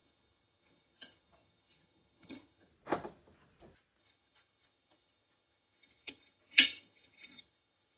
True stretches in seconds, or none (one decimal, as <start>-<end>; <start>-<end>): 2.7-4.0